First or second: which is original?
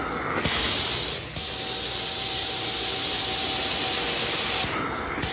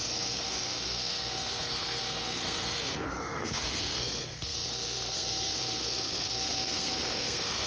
first